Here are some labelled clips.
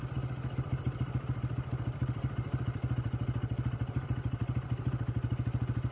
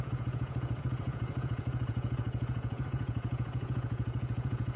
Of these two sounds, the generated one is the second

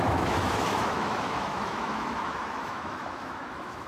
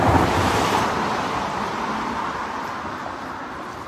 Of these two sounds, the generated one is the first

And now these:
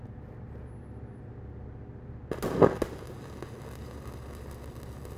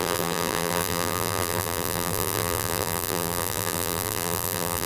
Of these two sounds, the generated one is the second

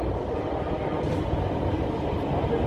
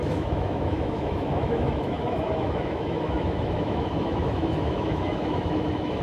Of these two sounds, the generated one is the second